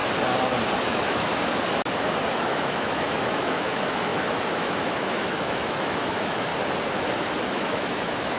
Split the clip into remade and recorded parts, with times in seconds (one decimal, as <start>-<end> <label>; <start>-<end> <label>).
0.0-0.8 recorded; 0.8-1.3 remade; 1.3-2.4 recorded; 2.4-6.5 remade; 6.5-7.5 recorded; 7.5-8.4 remade